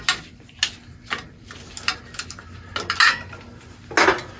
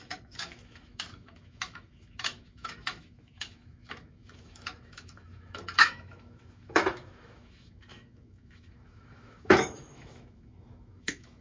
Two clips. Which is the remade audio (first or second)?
second